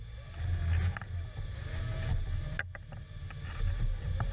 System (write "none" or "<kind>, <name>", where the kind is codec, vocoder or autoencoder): none